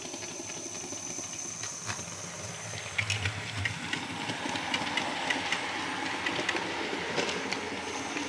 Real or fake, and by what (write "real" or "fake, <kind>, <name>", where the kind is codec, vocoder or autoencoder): real